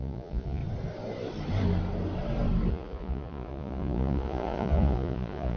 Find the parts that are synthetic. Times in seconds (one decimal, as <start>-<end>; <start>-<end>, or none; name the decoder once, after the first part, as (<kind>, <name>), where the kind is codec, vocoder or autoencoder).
0.0-0.6 (vocoder, Vocos); 2.7-5.6